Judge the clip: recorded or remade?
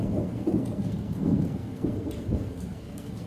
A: remade